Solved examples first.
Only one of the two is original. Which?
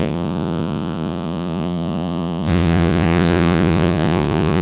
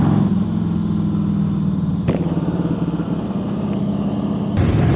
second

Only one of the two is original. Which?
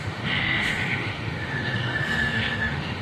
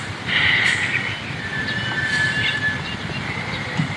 second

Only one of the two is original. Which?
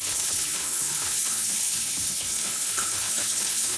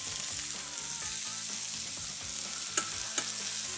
second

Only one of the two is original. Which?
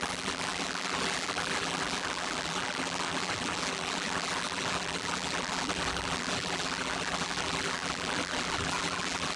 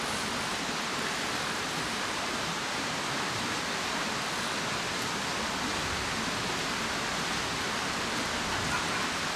second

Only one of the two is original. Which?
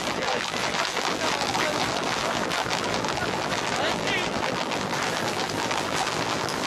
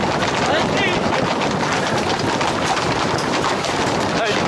second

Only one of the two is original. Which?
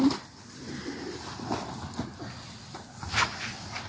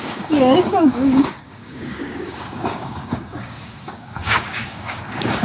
first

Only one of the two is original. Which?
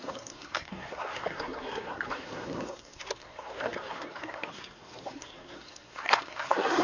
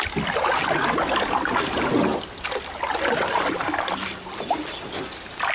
second